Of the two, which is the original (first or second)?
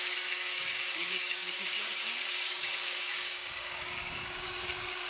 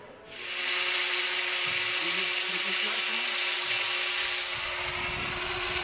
second